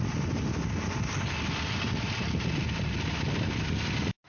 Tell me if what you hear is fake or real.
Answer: real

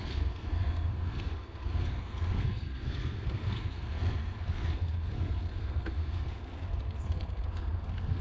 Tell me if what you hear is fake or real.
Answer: fake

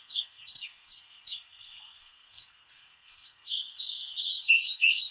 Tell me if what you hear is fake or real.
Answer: fake